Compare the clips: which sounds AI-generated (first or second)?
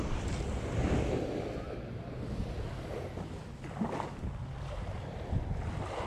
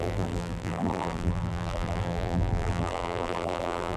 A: second